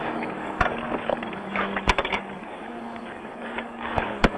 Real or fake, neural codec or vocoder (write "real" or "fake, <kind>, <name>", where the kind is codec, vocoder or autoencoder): fake, codec, DAC